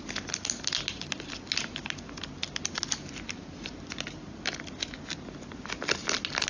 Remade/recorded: recorded